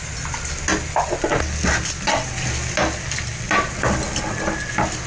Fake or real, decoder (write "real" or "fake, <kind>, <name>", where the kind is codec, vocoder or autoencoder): real